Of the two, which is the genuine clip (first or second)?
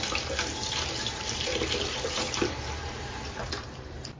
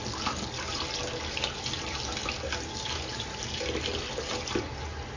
second